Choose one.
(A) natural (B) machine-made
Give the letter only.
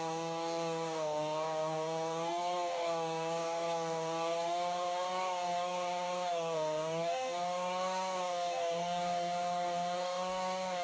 B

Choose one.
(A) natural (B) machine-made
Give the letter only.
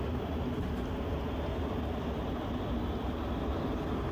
A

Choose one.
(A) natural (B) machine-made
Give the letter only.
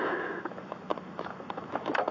B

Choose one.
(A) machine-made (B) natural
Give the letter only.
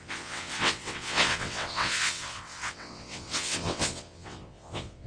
A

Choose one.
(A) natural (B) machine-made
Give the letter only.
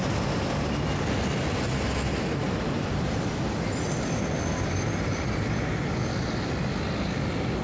A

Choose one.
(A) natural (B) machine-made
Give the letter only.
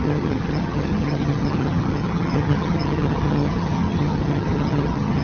B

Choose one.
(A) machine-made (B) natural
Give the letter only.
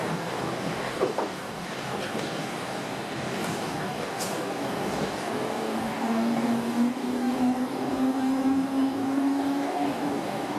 A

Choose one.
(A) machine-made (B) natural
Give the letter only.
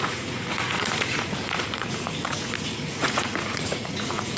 A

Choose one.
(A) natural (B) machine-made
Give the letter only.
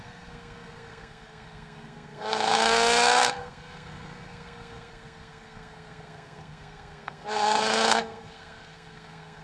B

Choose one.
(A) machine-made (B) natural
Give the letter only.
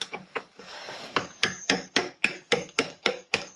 A